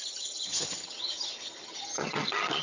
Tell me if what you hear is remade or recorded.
remade